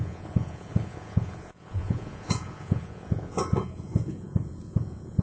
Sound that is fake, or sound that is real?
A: fake